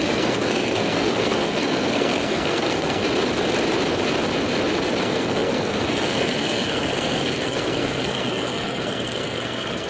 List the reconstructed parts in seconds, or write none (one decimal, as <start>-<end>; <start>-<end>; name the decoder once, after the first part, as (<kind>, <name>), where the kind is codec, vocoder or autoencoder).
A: 0.0-3.0 (codec, SNAC); 5.0-9.9